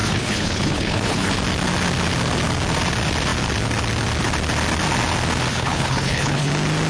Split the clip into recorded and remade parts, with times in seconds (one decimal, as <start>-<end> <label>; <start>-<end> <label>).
0.0-1.3 remade; 1.3-5.5 recorded; 5.5-6.5 remade; 6.5-6.9 recorded